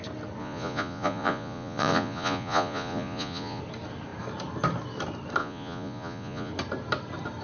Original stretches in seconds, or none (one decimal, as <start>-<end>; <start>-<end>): 0.0-0.4; 3.6-5.4; 6.5-7.4